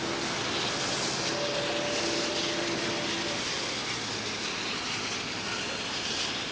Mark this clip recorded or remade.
recorded